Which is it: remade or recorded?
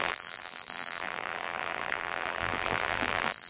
remade